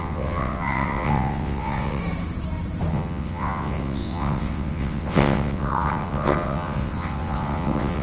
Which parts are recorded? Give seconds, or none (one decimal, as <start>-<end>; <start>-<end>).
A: 2.0-2.9